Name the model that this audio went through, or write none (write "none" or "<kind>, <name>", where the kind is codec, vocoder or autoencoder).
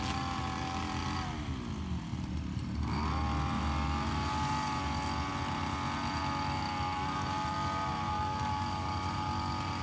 none